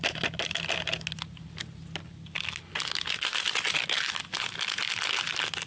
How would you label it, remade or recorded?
recorded